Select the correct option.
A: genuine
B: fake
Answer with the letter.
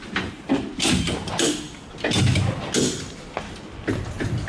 A